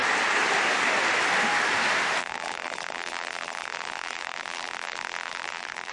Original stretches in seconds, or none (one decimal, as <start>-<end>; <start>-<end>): 0.0-2.2